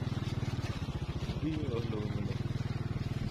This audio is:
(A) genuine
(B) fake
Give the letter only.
A